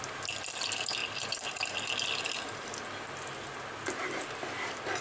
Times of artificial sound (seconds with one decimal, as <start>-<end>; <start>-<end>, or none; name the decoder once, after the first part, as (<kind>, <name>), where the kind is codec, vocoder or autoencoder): none